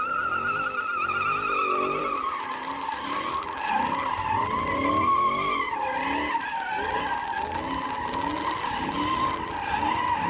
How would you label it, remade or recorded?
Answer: recorded